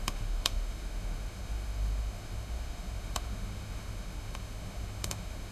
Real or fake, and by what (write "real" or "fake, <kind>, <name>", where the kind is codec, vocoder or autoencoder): fake, autoencoder, DAC-VAE